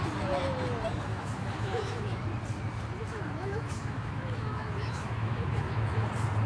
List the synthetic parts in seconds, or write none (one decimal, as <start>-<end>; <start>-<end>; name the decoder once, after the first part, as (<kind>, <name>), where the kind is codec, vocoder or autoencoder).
1.1-2.2 (autoencoder, DAC-VAE); 3.0-6.1